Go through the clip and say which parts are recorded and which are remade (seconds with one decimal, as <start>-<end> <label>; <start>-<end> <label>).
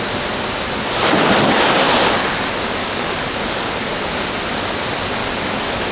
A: 0.0-2.8 recorded; 2.8-3.9 remade; 3.9-5.2 recorded; 5.2-5.9 remade